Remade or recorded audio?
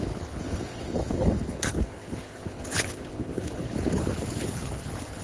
remade